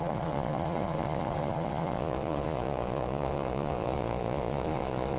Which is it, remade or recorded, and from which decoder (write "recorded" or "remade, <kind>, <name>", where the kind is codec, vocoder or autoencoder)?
remade, vocoder, Vocos